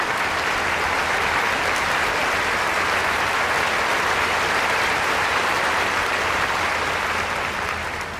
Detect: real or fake real